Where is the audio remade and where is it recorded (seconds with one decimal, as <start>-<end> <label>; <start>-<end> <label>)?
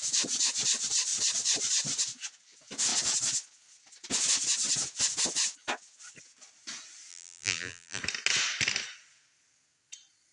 0.0-7.1 recorded; 7.1-8.0 remade; 8.0-10.3 recorded